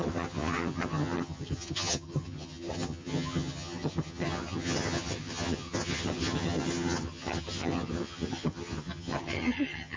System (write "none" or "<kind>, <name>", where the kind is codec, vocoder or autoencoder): vocoder, HiFi-GAN